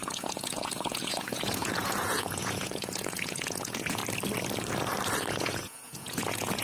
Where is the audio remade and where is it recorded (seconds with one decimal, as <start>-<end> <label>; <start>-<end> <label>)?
0.0-4.0 remade; 4.0-5.3 recorded; 5.3-6.6 remade